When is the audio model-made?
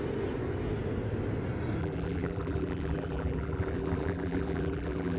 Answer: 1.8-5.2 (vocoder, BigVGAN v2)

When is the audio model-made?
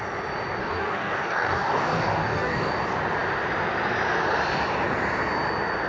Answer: 0.6-2.7 (codec, DAC)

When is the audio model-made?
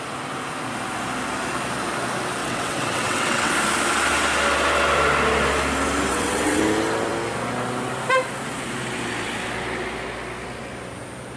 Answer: 2.4-3.5 (vocoder, WaveNeXt); 6.1-6.6